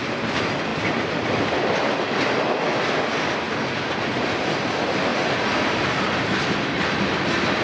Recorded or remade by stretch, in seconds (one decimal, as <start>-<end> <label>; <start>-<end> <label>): 0.0-5.1 recorded; 5.1-6.4 remade; 6.4-7.6 recorded